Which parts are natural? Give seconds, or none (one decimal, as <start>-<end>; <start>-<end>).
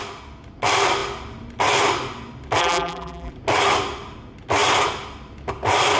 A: 0.0-2.6; 3.3-6.0